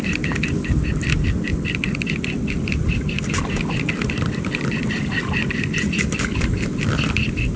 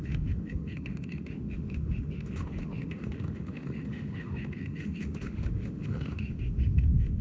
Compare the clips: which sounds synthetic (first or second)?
second